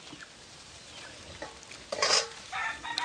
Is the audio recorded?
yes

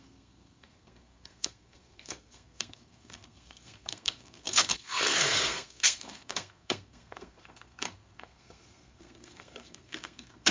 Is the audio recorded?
no